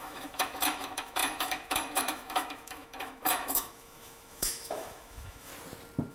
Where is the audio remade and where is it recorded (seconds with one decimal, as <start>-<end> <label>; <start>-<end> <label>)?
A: 0.0-5.5 remade; 5.5-6.1 recorded